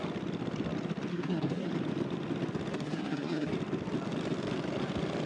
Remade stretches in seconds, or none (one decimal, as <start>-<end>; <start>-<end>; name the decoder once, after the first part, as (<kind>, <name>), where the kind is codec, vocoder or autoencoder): 1.1-1.7 (codec, SNAC); 2.7-3.5